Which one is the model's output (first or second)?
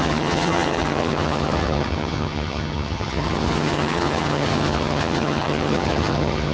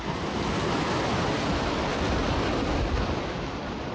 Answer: first